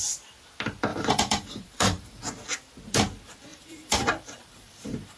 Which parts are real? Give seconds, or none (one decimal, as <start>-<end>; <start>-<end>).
0.0-0.9; 2.2-3.5